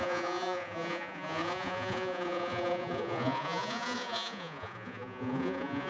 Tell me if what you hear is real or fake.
fake